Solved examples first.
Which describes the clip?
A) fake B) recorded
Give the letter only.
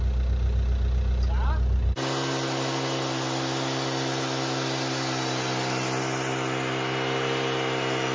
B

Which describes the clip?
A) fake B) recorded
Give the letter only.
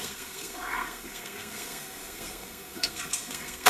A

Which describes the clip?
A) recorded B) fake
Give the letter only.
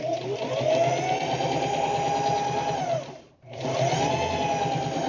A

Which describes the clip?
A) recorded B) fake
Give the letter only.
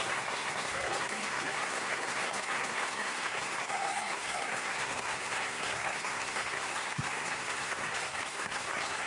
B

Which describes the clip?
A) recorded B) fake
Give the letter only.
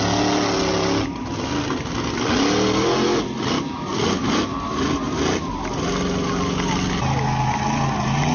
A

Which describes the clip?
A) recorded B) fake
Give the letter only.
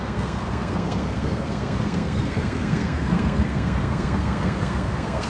B